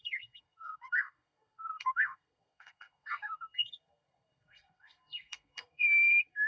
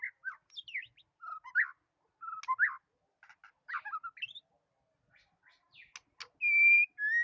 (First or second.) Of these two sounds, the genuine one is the second